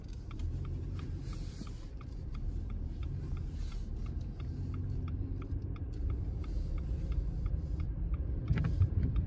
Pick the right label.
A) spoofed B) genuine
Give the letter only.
A